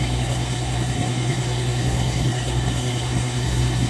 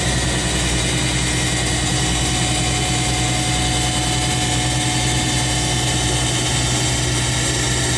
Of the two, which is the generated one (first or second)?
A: first